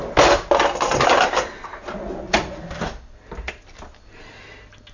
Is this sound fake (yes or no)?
no